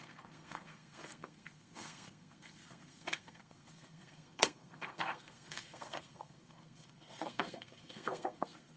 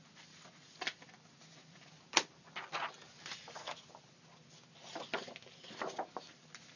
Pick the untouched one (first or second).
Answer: second